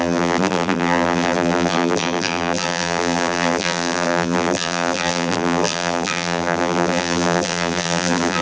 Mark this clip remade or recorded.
remade